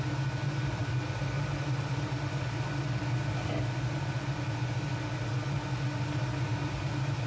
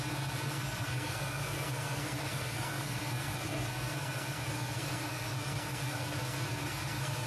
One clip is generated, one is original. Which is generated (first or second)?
second